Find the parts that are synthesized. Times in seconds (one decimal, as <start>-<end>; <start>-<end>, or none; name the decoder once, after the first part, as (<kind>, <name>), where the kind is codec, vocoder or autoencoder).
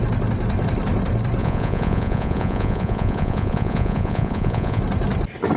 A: 1.4-4.8 (vocoder, Vocos)